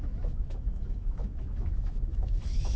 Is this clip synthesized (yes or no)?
yes